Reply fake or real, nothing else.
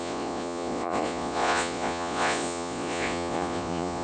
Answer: fake